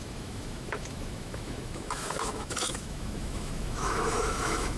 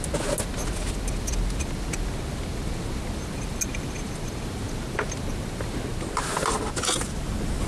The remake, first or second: first